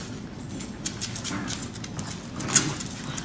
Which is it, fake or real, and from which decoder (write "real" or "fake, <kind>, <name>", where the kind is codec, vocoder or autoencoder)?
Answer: real